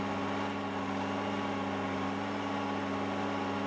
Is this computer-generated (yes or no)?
no